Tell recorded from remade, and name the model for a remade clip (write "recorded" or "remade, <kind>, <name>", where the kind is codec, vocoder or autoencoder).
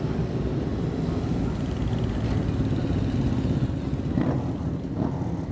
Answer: recorded